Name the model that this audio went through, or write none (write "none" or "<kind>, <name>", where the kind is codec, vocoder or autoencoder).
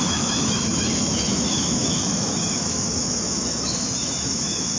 autoencoder, DAC-VAE